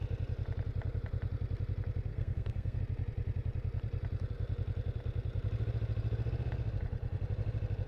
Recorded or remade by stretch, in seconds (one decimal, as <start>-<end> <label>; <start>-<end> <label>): 0.0-2.1 recorded; 2.1-2.8 remade; 2.8-7.9 recorded